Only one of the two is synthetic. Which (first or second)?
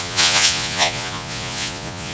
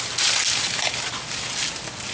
first